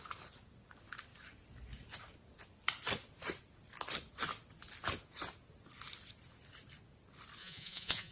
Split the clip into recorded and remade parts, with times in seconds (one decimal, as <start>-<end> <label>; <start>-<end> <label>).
0.0-7.4 recorded; 7.4-8.1 remade

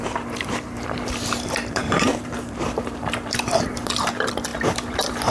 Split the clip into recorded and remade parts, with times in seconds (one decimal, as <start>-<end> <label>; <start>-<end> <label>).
0.0-5.3 remade

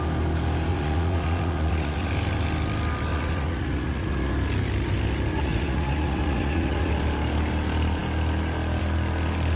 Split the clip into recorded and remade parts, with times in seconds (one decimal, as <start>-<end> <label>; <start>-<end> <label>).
0.0-0.7 recorded; 0.7-2.1 remade; 2.1-3.1 recorded; 3.1-4.3 remade; 4.3-5.3 recorded; 5.3-6.9 remade; 6.9-9.6 recorded

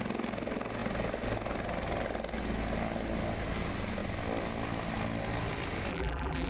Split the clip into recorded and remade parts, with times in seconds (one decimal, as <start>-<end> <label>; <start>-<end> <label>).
0.0-5.9 recorded; 5.9-6.5 remade